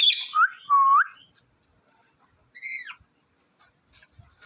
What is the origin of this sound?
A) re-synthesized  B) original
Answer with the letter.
B